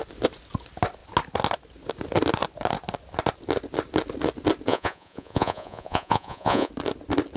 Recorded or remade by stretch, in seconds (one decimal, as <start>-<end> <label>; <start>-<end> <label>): 0.0-4.7 recorded; 4.7-6.7 remade; 6.7-7.4 recorded